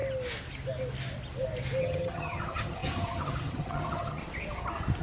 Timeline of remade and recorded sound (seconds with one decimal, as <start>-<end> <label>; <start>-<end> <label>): 0.0-1.8 recorded; 1.8-4.2 remade; 4.2-5.0 recorded